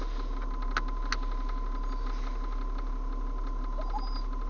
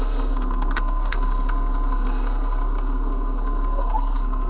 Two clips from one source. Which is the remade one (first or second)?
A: second